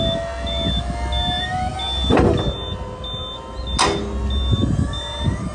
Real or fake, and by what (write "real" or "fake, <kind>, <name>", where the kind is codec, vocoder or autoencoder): real